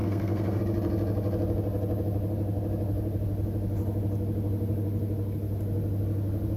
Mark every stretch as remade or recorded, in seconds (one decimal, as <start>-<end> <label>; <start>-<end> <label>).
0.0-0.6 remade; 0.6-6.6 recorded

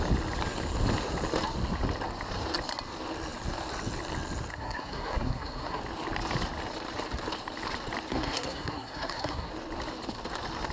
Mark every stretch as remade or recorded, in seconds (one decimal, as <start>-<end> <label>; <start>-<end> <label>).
0.0-4.5 recorded; 4.5-5.8 remade; 5.8-8.1 recorded; 8.1-9.5 remade; 9.5-10.7 recorded

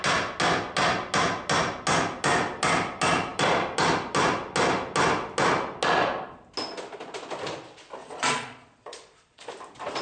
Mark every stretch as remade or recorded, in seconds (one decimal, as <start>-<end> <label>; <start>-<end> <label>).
0.0-8.0 recorded; 8.0-9.5 remade; 9.5-10.0 recorded